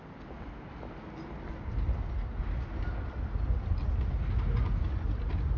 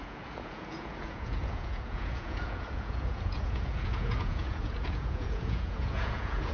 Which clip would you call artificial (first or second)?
second